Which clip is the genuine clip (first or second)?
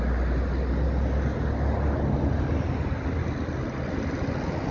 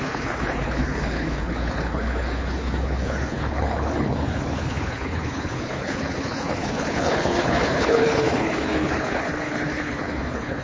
first